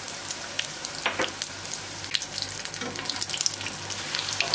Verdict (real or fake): real